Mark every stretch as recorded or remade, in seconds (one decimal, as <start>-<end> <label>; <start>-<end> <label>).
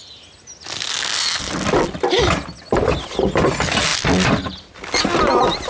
0.0-5.7 recorded